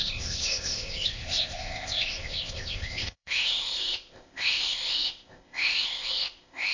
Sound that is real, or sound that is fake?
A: fake